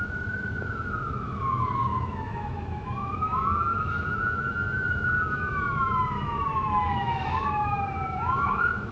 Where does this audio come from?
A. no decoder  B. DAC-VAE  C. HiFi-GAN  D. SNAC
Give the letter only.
B